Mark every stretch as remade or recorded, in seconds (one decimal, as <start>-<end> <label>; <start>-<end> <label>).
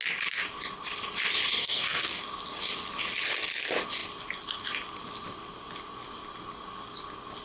0.0-1.6 recorded; 1.6-2.2 remade; 2.2-7.4 recorded